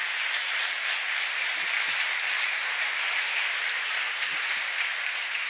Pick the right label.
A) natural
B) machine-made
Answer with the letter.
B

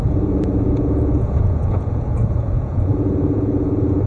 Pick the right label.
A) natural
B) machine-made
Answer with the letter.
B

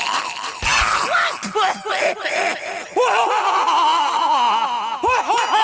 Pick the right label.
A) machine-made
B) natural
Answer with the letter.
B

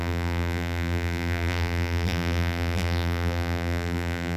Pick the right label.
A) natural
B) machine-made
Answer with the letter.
B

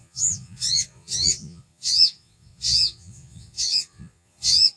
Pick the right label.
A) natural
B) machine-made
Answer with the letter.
B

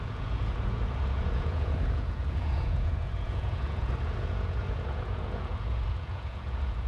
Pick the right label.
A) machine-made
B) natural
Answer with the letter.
A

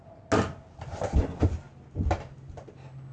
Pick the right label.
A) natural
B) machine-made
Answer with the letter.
A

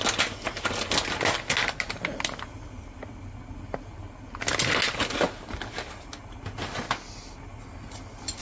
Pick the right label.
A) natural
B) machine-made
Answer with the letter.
A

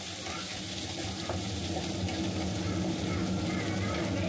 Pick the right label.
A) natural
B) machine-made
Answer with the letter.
A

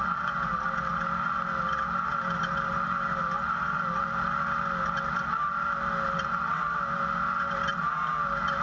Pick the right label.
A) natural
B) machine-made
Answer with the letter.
A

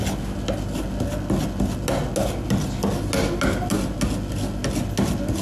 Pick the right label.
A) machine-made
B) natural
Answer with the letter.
B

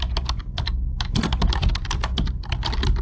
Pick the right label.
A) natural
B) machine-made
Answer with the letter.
A